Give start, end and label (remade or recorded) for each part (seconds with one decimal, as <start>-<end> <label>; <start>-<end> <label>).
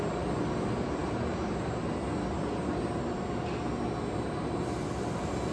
0.0-5.5 recorded